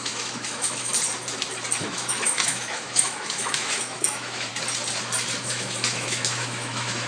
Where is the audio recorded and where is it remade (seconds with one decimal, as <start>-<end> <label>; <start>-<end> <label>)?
0.0-0.9 remade; 0.9-1.8 recorded; 1.8-4.5 remade; 4.5-5.4 recorded; 5.4-7.1 remade